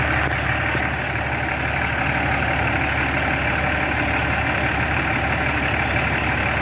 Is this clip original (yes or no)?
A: yes